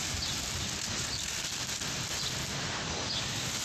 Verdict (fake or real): real